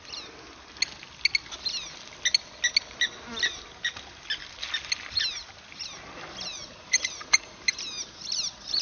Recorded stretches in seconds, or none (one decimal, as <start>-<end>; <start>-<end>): 0.0-6.6; 7.6-8.8